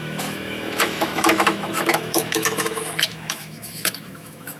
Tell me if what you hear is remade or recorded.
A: remade